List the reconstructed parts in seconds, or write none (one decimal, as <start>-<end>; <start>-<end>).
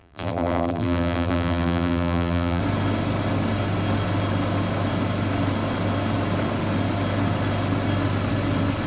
0.0-2.6